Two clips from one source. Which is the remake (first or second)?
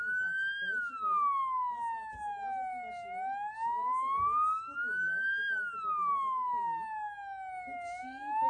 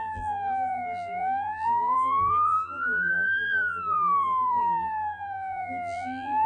second